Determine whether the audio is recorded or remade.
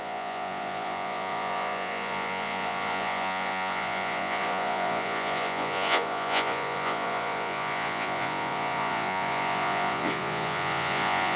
remade